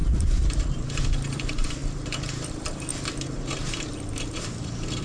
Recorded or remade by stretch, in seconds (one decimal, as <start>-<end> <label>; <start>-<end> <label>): 0.0-5.0 remade